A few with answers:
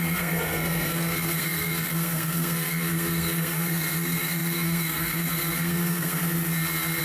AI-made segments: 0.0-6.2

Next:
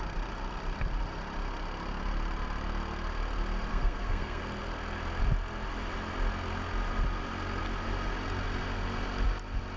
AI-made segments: 3.7-4.4